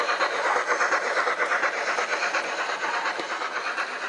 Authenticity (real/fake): real